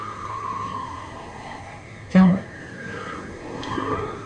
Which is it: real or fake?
fake